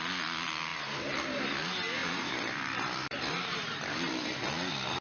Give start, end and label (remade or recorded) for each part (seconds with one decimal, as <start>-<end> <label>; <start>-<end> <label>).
0.0-0.7 recorded; 0.7-1.5 remade; 1.5-2.0 recorded; 2.0-4.4 remade; 4.4-5.0 recorded